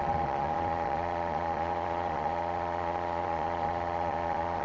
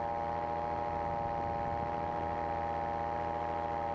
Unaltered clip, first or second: second